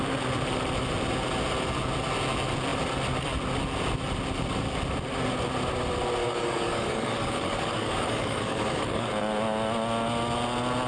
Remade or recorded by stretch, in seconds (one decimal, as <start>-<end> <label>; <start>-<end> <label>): 0.0-6.2 recorded; 6.2-9.1 remade; 9.1-10.9 recorded